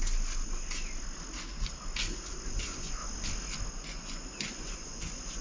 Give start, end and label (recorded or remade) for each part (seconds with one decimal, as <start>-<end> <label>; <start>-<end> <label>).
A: 0.0-2.6 recorded; 2.6-3.0 remade; 3.0-3.7 recorded; 3.7-5.4 remade